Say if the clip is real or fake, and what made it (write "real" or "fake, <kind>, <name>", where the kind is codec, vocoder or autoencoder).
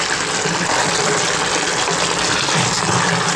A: real